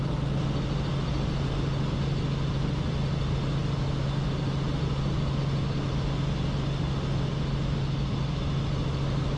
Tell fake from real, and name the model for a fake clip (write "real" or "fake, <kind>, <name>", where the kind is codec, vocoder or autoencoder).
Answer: real